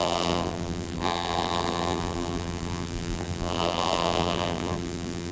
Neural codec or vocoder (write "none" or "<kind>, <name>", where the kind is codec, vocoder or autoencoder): vocoder, BigVGAN v2